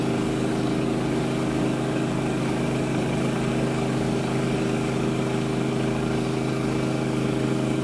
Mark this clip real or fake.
fake